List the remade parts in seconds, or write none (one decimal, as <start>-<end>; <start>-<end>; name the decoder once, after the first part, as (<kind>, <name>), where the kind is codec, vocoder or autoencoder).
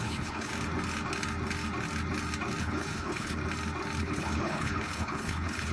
0.0-0.5 (codec, HILCodec); 2.6-3.4; 4.0-5.7